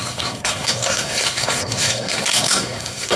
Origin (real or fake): fake